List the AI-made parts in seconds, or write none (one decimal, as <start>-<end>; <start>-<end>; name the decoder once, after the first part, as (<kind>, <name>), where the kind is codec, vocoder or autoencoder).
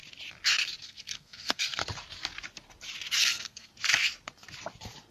0.8-1.8 (codec, SNAC); 3.2-3.7